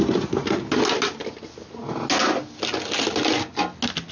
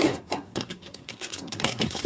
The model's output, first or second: second